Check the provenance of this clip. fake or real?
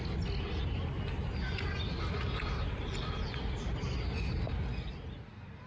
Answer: real